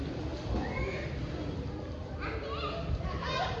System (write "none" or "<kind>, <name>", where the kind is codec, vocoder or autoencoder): none